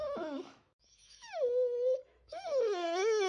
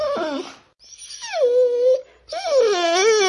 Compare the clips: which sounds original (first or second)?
second